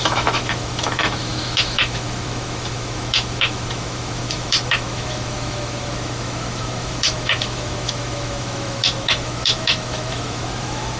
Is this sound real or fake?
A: fake